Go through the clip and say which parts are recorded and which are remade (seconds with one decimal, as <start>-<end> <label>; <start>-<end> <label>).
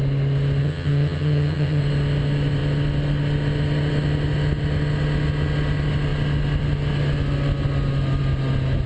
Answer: 0.0-0.6 recorded; 0.6-1.8 remade; 1.8-8.9 recorded